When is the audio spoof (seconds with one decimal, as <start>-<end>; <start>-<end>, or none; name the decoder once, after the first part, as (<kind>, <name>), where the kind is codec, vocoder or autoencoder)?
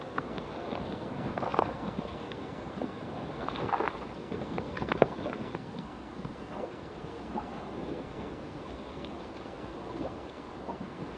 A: 0.0-11.2 (codec, SNAC)